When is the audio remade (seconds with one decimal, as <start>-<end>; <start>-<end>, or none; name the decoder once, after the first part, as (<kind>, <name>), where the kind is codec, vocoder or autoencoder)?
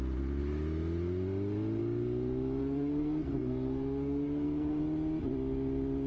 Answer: 2.6-4.8 (codec, SNAC)